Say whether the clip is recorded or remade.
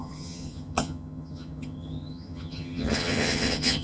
remade